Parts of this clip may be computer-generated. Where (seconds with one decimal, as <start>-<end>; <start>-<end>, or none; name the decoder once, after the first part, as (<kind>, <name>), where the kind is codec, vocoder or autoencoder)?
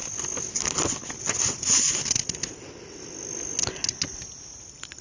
none